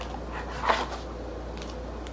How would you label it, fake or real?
real